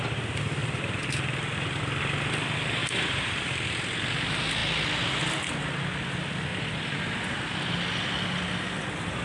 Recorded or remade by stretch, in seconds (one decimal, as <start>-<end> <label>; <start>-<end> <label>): 0.0-0.6 recorded; 0.6-1.8 remade; 1.8-2.8 recorded; 2.8-3.7 remade; 3.7-6.5 recorded; 6.5-7.2 remade; 7.2-9.2 recorded

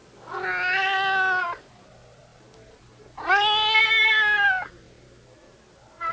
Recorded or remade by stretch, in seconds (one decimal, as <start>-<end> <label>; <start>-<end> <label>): 0.0-6.1 recorded

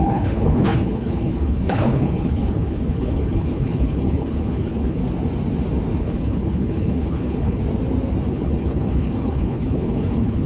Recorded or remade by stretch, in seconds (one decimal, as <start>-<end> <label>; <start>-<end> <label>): 0.0-5.0 remade; 5.0-6.0 recorded; 6.0-7.6 remade; 7.6-8.3 recorded; 8.3-10.5 remade

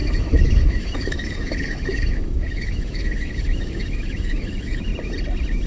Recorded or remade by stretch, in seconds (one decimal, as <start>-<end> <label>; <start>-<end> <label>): 0.0-4.9 remade; 4.9-5.7 recorded

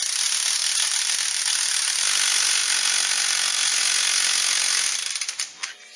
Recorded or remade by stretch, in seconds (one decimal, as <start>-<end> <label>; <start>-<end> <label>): 0.0-0.6 recorded; 0.6-1.5 remade; 1.5-2.6 recorded; 2.6-3.8 remade; 3.8-6.0 recorded

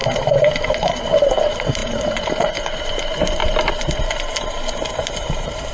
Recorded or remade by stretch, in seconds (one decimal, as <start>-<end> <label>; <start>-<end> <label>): 0.0-5.7 remade